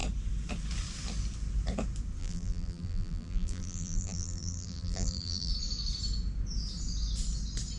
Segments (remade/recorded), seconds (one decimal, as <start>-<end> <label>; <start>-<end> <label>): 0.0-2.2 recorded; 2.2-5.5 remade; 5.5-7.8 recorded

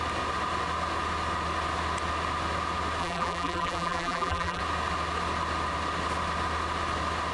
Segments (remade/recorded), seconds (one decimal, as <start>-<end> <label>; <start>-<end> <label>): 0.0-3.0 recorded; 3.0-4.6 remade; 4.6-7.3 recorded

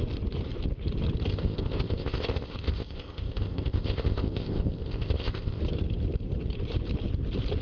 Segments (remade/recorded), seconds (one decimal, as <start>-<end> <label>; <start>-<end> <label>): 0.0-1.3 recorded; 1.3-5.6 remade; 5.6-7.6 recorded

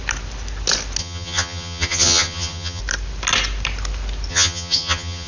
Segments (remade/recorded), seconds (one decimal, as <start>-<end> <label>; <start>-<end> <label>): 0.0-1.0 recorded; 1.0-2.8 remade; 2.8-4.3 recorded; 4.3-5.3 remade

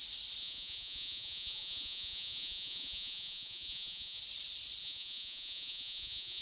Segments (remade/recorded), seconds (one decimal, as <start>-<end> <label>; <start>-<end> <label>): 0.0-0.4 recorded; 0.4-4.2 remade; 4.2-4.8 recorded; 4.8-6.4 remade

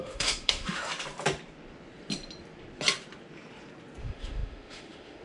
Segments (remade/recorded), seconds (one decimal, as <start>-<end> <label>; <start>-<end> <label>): 0.0-0.9 remade; 0.9-4.0 recorded; 4.0-5.2 remade

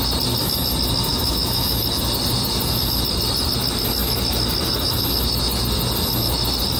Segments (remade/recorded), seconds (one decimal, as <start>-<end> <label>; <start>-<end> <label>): 0.0-1.1 recorded; 1.1-1.8 remade; 1.8-6.8 recorded